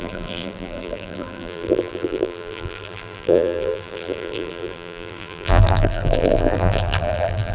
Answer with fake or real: fake